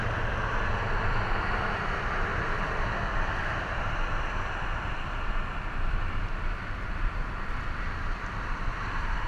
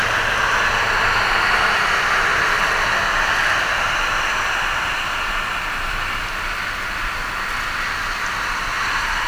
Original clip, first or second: second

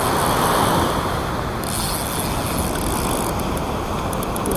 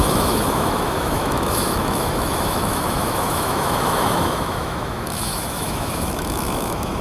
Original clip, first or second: first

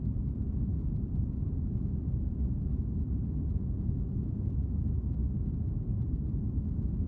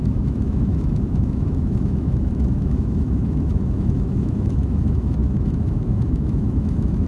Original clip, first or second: first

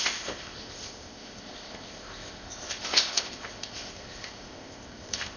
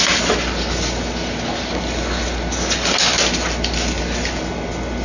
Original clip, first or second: second